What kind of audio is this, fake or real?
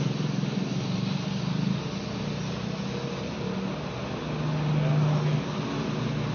real